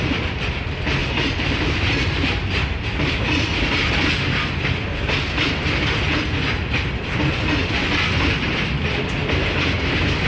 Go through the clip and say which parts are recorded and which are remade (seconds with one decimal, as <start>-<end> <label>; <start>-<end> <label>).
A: 0.0-1.0 recorded; 1.0-3.9 remade; 3.9-10.3 recorded